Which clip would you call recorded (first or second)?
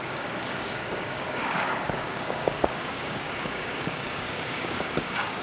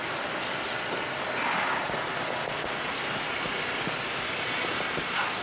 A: second